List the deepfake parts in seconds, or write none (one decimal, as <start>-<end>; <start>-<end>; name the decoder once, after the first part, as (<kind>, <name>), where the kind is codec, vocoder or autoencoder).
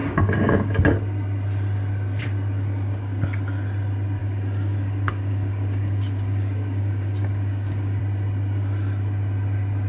0.0-0.7 (codec, DAC); 4.2-8.0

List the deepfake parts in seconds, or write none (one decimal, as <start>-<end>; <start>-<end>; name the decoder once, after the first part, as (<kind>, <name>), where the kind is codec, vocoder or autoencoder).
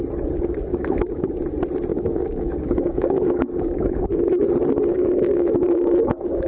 0.7-1.3 (codec, DAC); 1.9-4.1; 4.9-6.5